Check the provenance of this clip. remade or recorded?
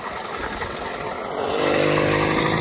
recorded